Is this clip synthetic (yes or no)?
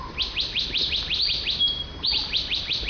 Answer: no